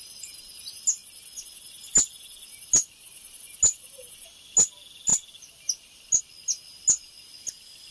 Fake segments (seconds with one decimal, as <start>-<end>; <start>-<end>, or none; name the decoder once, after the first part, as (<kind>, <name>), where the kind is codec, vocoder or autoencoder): none

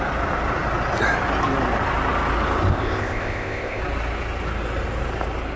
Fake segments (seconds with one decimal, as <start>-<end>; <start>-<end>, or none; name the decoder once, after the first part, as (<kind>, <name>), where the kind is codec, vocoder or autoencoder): 2.7-3.8 (codec, ZipCodec)

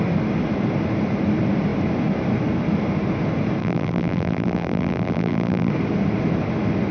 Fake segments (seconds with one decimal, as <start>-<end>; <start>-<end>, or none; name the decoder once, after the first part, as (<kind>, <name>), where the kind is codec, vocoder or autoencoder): 3.6-5.7 (vocoder, BigVGAN v2)

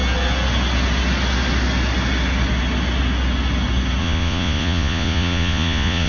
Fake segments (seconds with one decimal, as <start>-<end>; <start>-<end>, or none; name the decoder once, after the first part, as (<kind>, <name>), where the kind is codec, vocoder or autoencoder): 4.0-6.1 (vocoder, Vocos)

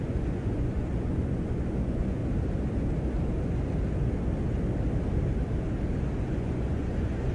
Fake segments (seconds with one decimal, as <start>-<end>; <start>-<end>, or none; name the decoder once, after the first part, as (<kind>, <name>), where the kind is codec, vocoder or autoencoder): 0.0-2.2 (vocoder, Vocos); 6.3-7.3